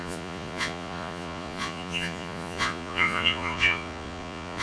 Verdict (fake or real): fake